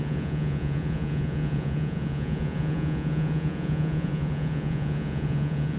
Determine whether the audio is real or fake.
fake